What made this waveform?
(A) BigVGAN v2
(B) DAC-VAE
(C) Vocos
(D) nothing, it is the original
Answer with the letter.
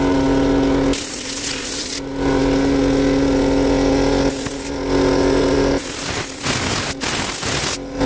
D